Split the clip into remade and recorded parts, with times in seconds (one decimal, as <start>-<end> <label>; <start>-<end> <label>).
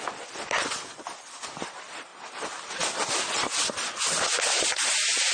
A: 0.0-5.3 recorded